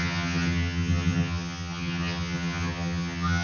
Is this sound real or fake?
fake